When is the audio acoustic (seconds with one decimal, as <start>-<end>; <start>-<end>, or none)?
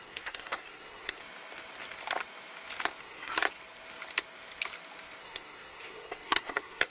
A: 1.2-3.0; 3.4-5.2